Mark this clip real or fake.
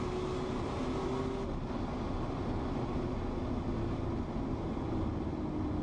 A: real